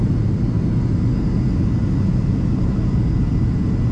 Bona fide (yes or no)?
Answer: yes